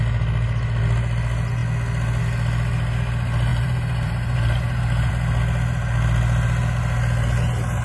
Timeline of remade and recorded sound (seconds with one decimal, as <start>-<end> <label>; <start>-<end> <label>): 0.0-3.5 recorded; 3.5-5.1 remade; 5.1-7.8 recorded